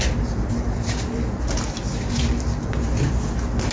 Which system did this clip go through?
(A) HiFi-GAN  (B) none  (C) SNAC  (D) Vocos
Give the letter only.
B